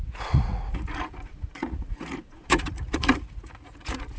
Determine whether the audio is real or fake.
fake